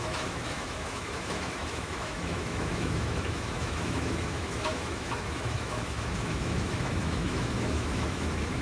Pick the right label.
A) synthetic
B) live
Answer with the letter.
A